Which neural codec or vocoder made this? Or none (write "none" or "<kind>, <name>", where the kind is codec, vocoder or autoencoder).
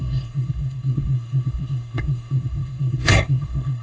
codec, SNAC